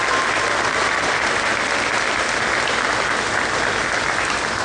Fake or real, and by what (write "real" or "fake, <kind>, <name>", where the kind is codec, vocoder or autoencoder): real